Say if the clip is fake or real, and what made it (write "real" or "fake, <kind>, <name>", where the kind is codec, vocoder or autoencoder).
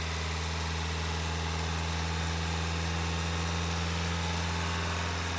real